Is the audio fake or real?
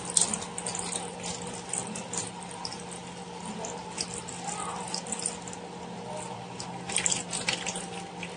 real